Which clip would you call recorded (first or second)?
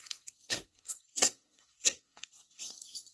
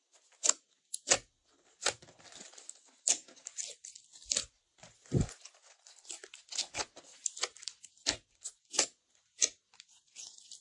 second